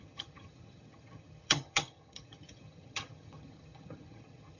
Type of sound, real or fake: fake